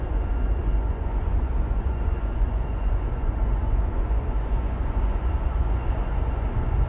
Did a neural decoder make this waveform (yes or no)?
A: yes